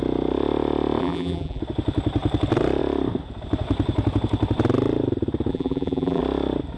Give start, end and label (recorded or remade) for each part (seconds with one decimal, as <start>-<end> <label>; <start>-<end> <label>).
0.0-1.0 recorded; 1.0-1.6 remade; 1.6-5.5 recorded; 5.5-6.2 remade; 6.2-6.8 recorded